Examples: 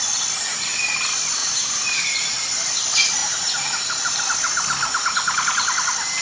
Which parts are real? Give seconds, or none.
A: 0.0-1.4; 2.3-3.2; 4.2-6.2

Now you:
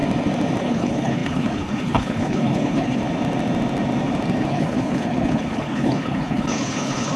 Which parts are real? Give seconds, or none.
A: 0.0-0.6; 3.0-4.5